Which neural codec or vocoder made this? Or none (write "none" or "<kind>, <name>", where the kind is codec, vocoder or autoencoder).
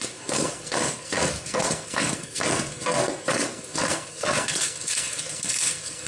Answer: codec, SNAC